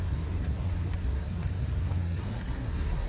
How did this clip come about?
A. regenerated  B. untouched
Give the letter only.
A